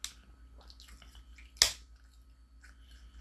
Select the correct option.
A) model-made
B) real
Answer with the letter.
B